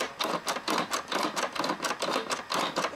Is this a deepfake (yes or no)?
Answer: no